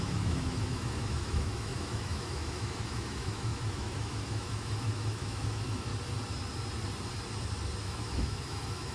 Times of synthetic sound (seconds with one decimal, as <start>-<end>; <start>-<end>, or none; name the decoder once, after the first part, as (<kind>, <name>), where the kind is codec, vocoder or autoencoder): 0.0-5.9 (autoencoder, DAC-VAE); 7.8-8.9